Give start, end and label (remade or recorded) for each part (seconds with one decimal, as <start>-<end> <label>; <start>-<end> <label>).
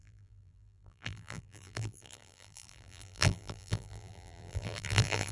0.0-5.3 remade